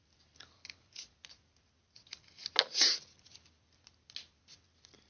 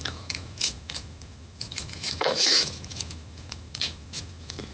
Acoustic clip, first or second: first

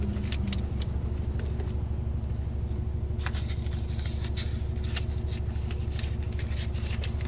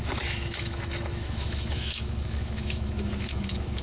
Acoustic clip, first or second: first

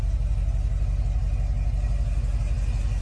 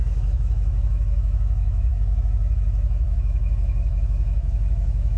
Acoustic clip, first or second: first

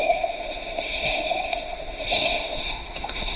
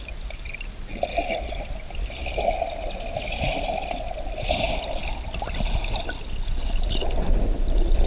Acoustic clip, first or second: second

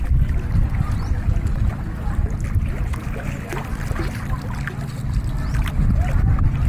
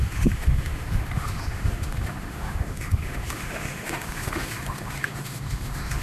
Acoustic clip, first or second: first